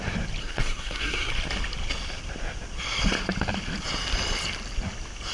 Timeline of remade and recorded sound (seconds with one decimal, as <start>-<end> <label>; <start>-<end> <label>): 0.0-0.4 recorded; 0.4-1.3 remade; 1.3-5.3 recorded